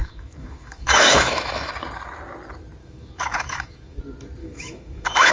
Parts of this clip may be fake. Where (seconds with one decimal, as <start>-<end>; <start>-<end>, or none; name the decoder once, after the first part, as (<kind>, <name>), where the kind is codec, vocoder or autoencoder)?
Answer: 0.0-1.7 (autoencoder, DAC-VAE); 2.8-4.0; 4.4-5.3